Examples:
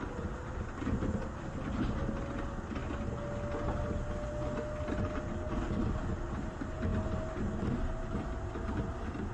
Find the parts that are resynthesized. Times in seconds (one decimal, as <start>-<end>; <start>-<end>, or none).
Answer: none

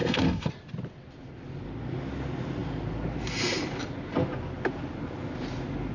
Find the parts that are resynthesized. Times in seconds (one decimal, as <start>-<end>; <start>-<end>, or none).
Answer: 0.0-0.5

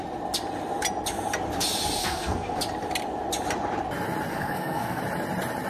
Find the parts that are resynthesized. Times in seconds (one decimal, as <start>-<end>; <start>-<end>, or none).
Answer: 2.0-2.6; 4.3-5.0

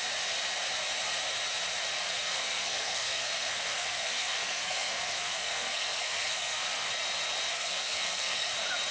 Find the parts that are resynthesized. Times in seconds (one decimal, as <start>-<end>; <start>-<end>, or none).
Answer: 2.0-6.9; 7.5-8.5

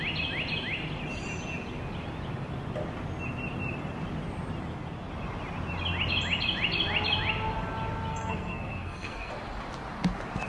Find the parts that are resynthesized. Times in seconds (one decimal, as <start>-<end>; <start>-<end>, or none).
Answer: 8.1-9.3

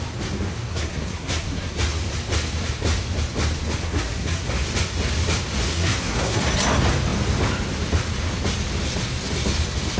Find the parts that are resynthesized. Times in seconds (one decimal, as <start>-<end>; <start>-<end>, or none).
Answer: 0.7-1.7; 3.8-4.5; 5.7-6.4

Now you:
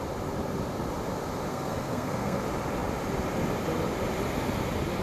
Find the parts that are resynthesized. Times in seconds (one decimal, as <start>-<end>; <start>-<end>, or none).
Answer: 1.5-2.4